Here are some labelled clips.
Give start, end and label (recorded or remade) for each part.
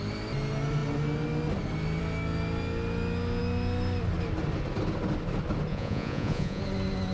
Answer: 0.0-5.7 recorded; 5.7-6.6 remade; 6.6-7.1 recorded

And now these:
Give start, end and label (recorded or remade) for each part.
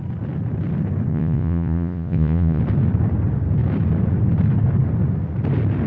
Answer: 0.0-1.1 recorded; 1.1-2.6 remade; 2.6-5.9 recorded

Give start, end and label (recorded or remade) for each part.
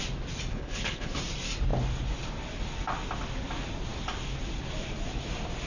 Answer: 0.0-0.5 recorded; 0.5-1.2 remade; 1.2-5.7 recorded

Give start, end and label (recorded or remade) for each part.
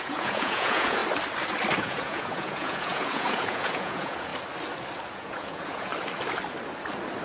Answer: 0.0-1.0 remade; 1.0-1.8 recorded; 1.8-4.3 remade; 4.3-5.1 recorded; 5.1-5.9 remade; 5.9-7.2 recorded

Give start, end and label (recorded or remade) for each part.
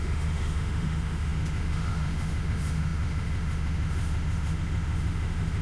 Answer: 0.0-5.6 remade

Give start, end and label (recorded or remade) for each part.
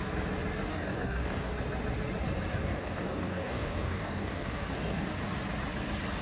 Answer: 0.0-0.7 recorded; 0.7-1.5 remade; 1.5-2.5 recorded; 2.5-5.1 remade; 5.1-6.2 recorded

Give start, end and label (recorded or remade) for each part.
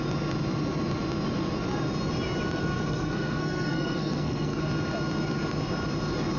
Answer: 0.0-2.6 recorded; 2.6-4.6 remade; 4.6-6.4 recorded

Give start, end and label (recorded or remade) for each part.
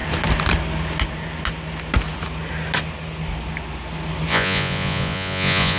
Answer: 0.0-4.3 recorded; 4.3-5.8 remade